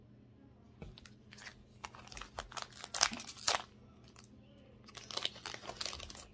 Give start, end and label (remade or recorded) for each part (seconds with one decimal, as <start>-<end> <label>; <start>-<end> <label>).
0.0-6.3 recorded